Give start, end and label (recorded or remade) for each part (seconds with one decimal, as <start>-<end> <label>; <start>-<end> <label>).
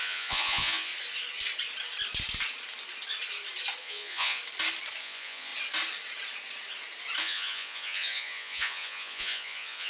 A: 0.0-0.9 remade; 0.9-3.8 recorded; 3.8-4.4 remade; 4.4-5.0 recorded; 5.0-5.5 remade; 5.5-7.2 recorded; 7.2-9.9 remade